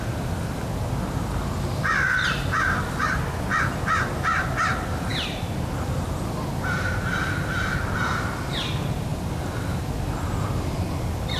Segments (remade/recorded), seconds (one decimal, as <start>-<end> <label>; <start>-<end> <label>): 0.0-11.4 recorded

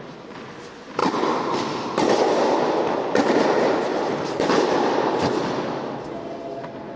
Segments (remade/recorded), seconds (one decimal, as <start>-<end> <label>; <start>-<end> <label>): 0.0-1.0 recorded; 1.0-1.6 remade; 1.6-3.9 recorded; 3.9-5.9 remade; 5.9-7.0 recorded

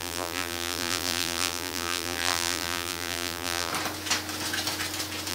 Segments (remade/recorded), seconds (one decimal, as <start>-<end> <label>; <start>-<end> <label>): 0.0-3.7 remade; 3.7-5.3 recorded

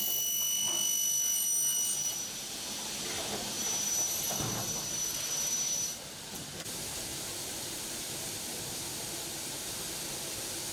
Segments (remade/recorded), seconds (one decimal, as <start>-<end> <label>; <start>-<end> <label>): 0.0-2.1 recorded; 2.1-6.4 remade; 6.4-7.1 recorded; 7.1-7.9 remade; 7.9-10.7 recorded

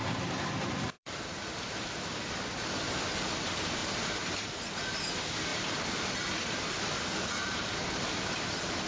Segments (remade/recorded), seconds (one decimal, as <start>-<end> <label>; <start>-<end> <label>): 0.0-2.2 remade; 2.2-3.8 recorded; 3.8-5.0 remade; 5.0-8.9 recorded

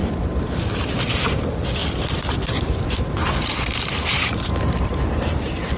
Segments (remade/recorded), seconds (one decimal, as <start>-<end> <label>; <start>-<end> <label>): 0.0-1.8 recorded; 1.8-3.5 remade; 3.5-5.8 recorded

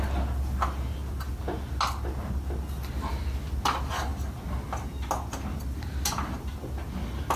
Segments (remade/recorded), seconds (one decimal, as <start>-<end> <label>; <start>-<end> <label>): 0.0-7.4 recorded